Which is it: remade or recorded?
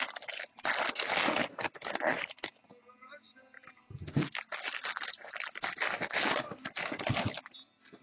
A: recorded